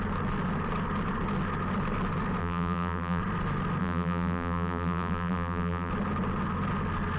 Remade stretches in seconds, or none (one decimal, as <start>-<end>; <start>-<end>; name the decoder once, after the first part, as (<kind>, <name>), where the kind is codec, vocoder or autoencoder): 2.4-3.2 (vocoder, BigVGAN v2); 3.8-5.9